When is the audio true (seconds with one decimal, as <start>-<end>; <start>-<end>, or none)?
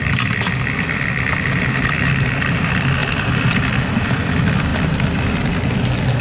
0.0-4.7; 5.7-6.2